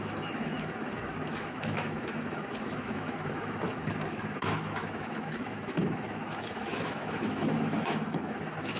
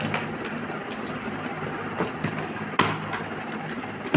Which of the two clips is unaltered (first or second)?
second